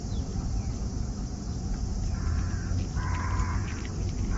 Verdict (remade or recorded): remade